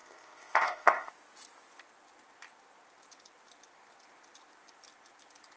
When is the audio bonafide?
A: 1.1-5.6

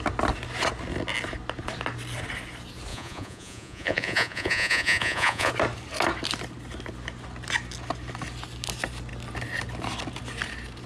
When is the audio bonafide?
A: 0.0-2.9; 5.5-10.9

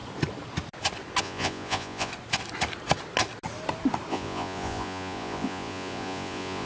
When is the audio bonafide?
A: 0.0-1.2; 2.1-4.1